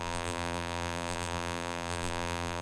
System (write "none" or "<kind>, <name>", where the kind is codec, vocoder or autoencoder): vocoder, BigVGAN v2